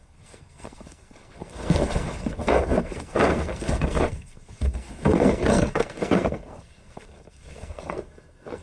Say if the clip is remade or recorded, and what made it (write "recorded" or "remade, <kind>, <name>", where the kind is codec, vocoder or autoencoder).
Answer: remade, codec, SNAC